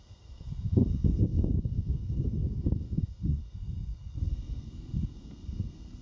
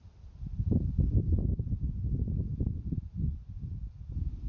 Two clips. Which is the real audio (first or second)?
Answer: second